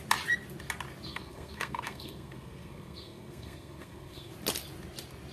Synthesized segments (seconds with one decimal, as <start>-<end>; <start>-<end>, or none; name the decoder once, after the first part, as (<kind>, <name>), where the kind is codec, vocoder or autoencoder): 1.1-4.3 (codec, SNAC)